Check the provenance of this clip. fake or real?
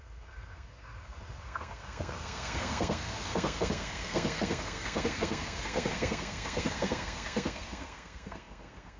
fake